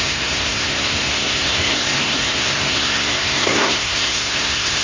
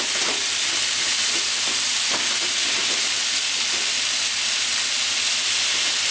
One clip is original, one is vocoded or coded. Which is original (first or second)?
second